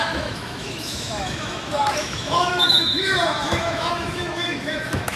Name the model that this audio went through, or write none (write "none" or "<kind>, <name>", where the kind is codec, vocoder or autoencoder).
autoencoder, DAC-VAE